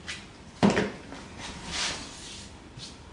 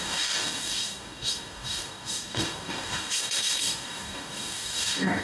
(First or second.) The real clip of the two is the first